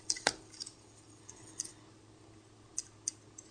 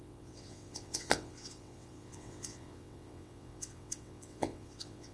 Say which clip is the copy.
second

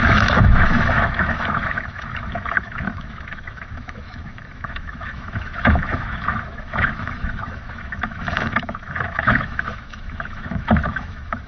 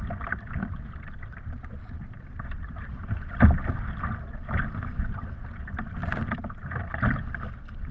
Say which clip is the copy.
first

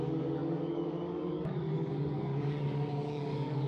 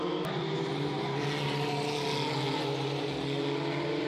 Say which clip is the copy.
first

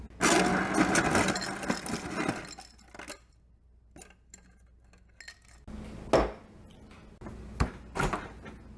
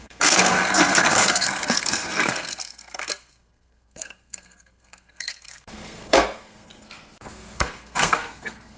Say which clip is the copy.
second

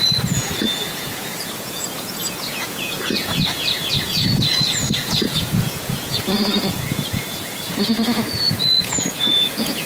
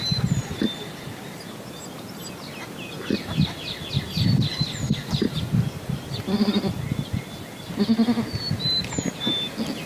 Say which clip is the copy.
first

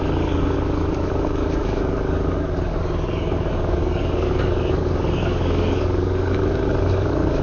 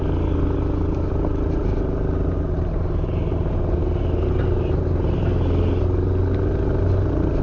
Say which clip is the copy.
first